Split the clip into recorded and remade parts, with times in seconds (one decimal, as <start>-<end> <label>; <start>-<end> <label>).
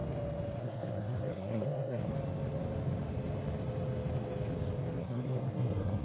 0.0-0.6 recorded; 0.6-2.1 remade; 2.1-5.0 recorded; 5.0-6.0 remade